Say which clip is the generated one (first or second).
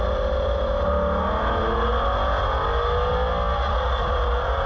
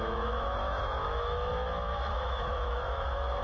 second